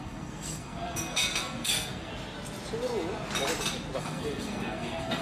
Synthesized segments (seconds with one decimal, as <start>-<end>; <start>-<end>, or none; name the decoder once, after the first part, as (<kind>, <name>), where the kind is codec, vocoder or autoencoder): 0.0-2.1 (codec, SNAC); 4.0-5.2